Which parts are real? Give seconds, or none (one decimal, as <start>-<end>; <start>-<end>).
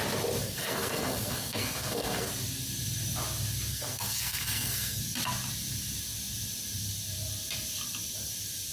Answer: 0.0-0.4; 2.3-3.7; 5.0-8.7